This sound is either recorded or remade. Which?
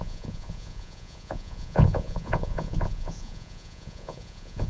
remade